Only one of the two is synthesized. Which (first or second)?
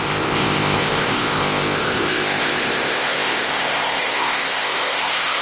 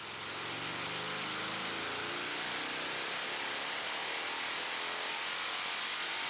first